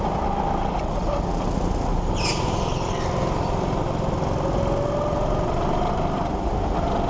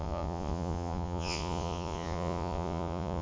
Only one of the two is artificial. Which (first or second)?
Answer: second